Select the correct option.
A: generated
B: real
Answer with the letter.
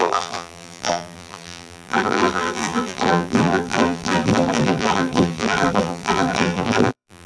A